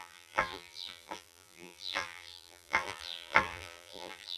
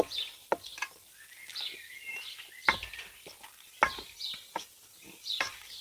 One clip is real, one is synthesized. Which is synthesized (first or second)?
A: first